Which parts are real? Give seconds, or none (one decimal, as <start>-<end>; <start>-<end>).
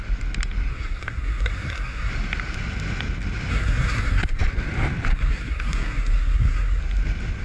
0.0-0.7; 2.1-3.5; 4.4-5.1; 6.8-7.4